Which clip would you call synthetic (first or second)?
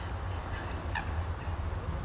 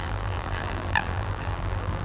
second